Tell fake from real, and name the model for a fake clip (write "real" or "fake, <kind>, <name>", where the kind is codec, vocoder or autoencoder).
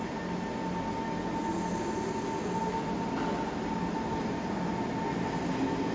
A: real